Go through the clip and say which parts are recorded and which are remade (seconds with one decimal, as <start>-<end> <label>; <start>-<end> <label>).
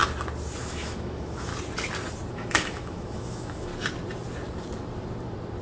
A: 0.0-0.6 recorded; 0.6-1.5 remade; 1.5-2.3 recorded; 2.3-3.7 remade; 3.7-5.6 recorded